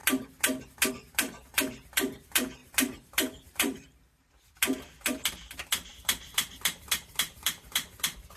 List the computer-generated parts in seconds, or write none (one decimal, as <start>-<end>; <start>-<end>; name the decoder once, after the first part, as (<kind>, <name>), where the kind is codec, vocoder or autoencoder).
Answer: 2.6-4.3 (vocoder, BigVGAN v2); 5.9-7.4